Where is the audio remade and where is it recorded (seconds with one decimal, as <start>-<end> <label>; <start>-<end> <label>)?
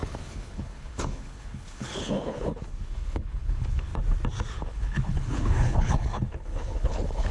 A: 0.0-3.9 remade; 3.9-4.5 recorded; 4.5-7.3 remade